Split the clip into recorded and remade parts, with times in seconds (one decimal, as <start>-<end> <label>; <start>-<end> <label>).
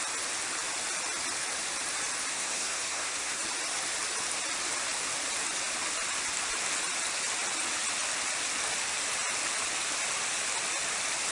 0.0-2.3 recorded; 2.3-3.4 remade; 3.4-11.3 recorded